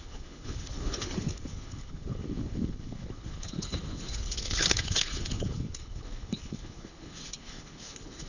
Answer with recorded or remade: remade